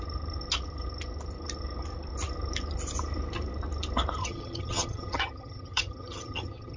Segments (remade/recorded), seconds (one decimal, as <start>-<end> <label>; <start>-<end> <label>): 0.0-4.2 recorded; 4.2-6.8 remade